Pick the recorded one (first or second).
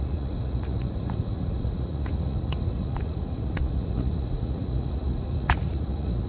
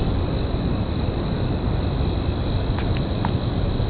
second